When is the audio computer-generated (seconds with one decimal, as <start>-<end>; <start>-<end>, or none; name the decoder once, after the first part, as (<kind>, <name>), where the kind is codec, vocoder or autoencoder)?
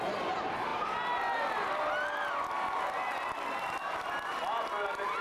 none